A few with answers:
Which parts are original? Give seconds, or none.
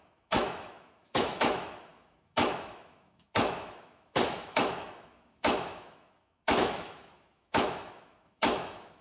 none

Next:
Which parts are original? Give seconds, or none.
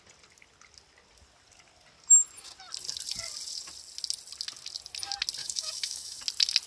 0.0-5.4; 6.2-6.7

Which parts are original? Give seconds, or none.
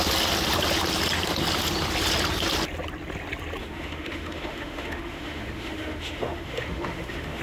0.0-3.6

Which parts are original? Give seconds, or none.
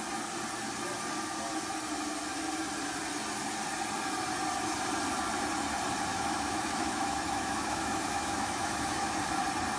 0.0-6.1; 9.2-9.8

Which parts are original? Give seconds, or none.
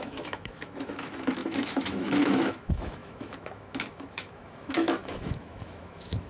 none